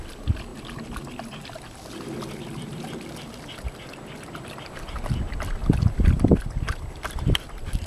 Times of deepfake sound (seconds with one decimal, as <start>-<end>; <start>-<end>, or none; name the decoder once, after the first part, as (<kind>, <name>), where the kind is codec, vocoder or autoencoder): none